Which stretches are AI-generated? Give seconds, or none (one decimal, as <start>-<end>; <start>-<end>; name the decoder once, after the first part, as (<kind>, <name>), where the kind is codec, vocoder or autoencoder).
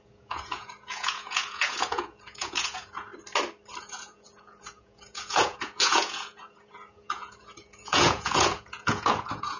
0.0-3.1 (vocoder, Vocos); 3.8-9.6